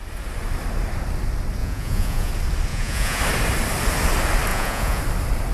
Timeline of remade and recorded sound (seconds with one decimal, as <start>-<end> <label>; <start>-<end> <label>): 0.0-1.6 recorded; 1.6-2.3 remade; 2.3-2.7 recorded; 2.7-3.2 remade; 3.2-4.5 recorded; 4.5-5.0 remade; 5.0-5.5 recorded